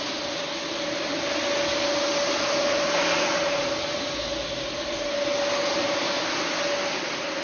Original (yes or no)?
yes